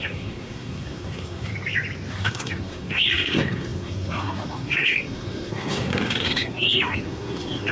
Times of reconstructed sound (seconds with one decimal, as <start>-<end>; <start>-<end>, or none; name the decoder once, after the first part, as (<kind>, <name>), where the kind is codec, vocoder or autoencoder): 0.0-1.5 (codec, SNAC); 2.1-7.7